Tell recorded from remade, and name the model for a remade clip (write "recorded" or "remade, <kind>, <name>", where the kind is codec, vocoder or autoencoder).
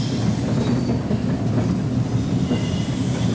recorded